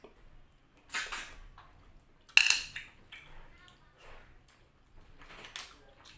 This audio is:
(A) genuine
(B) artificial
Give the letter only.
A